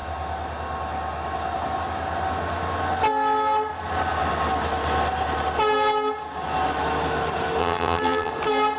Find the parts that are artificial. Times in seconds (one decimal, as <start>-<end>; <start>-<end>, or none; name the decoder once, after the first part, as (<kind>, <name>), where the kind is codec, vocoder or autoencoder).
7.6-8.3 (vocoder, HiFi-GAN)